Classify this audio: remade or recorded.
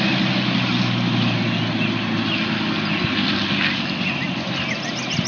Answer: recorded